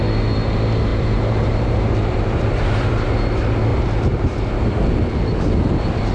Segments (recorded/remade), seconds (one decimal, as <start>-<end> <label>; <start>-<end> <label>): 0.0-0.9 recorded; 0.9-3.1 remade; 3.1-3.7 recorded; 3.7-4.8 remade; 4.8-6.1 recorded